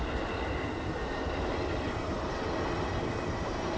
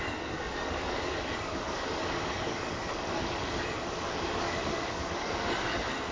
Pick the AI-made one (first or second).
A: second